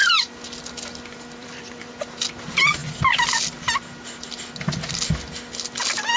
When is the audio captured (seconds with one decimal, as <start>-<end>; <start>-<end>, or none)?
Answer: 0.0-1.4; 1.9-6.2